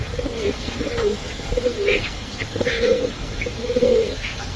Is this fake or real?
fake